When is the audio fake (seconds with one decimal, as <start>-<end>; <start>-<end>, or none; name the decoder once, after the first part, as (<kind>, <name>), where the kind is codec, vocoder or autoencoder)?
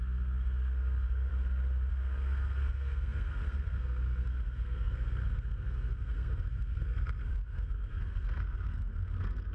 0.0-1.3 (codec, SNAC); 1.9-9.5